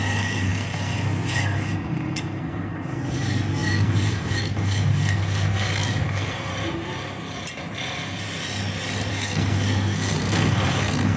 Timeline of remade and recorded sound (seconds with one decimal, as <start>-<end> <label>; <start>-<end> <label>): 0.0-6.5 remade; 6.5-9.1 recorded; 9.1-11.2 remade